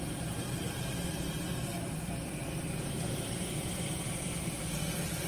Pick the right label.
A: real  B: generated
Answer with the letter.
A